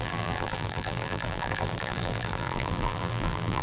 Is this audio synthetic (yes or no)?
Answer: yes